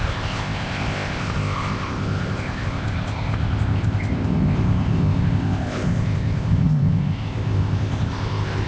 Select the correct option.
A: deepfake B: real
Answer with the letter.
A